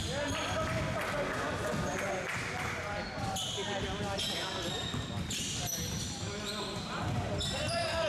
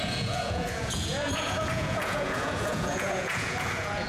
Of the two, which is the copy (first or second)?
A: second